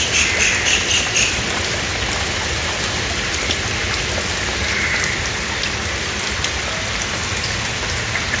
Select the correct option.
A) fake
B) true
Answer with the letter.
B